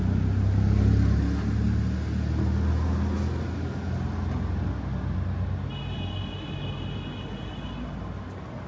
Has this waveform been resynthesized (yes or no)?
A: no